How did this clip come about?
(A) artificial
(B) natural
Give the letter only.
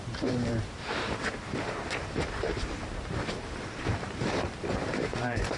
A